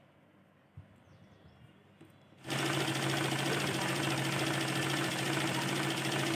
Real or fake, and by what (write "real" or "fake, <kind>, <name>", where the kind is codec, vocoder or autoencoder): real